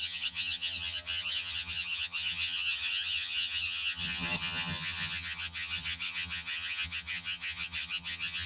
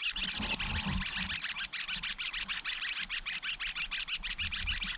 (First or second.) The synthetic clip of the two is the first